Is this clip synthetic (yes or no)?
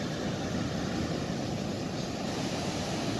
no